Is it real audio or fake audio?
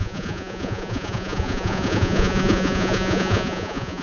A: fake